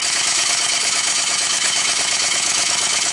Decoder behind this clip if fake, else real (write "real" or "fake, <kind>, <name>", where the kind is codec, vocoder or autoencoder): fake, autoencoder, DAC-VAE